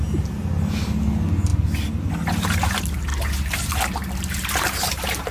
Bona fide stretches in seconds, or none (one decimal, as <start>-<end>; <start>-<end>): 0.0-3.1